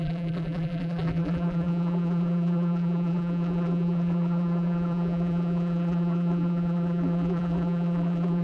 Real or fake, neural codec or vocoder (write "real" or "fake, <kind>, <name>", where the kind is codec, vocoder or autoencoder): fake, vocoder, BigVGAN v2